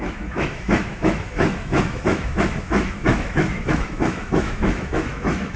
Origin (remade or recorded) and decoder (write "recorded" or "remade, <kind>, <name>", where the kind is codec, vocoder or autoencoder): remade, autoencoder, DAC-VAE